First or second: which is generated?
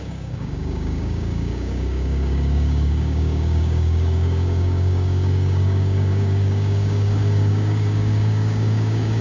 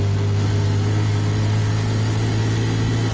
first